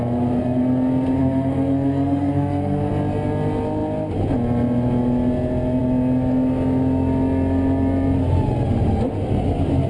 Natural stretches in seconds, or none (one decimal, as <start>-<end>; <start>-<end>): 0.0-1.2; 2.9-9.9